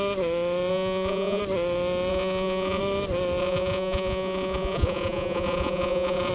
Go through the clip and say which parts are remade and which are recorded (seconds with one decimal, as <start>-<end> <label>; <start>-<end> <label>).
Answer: 0.0-0.7 recorded; 0.7-1.4 remade; 1.4-2.1 recorded; 2.1-2.8 remade; 2.8-3.4 recorded; 3.4-6.3 remade